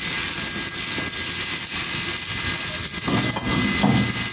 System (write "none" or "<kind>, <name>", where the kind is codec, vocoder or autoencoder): none